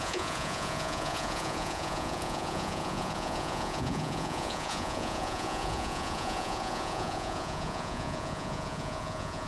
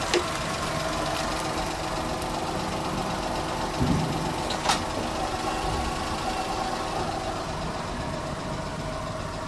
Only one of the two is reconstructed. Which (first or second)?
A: first